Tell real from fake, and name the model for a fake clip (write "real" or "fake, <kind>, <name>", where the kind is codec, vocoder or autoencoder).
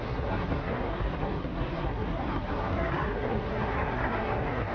fake, codec, SNAC